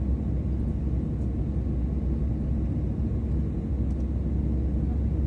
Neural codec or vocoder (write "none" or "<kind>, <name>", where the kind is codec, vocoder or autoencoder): none